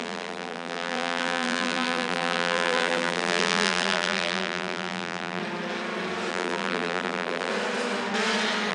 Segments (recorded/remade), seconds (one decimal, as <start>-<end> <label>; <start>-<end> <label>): 0.0-5.4 remade; 5.4-6.3 recorded; 6.3-7.5 remade; 7.5-8.7 recorded